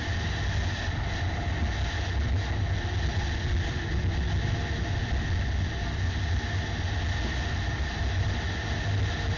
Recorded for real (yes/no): yes